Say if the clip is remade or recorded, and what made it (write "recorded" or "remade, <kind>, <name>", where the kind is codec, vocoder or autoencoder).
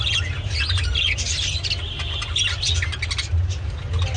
recorded